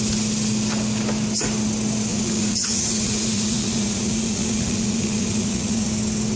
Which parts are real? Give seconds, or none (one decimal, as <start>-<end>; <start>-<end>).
0.0-2.1; 5.9-6.4